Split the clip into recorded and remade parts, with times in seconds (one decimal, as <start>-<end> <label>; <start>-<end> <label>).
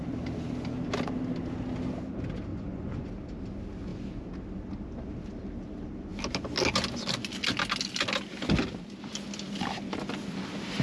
0.0-2.5 recorded; 2.5-3.1 remade; 3.1-10.8 recorded